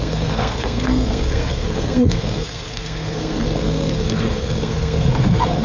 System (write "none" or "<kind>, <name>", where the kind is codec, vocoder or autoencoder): codec, SNAC